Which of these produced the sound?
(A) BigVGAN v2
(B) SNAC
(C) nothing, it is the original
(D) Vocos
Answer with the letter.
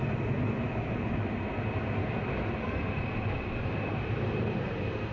C